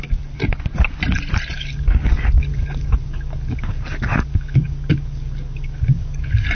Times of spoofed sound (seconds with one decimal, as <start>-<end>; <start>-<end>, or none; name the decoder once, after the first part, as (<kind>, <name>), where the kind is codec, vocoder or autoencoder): 0.0-0.4 (codec, DAC); 1.5-6.5